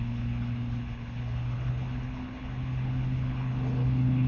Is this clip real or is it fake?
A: fake